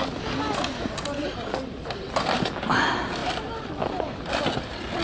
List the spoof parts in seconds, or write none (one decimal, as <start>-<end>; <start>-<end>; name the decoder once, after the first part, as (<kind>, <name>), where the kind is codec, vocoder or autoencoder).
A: none